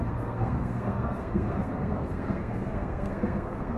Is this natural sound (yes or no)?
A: no